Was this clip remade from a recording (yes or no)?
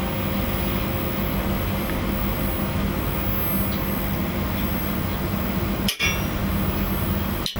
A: no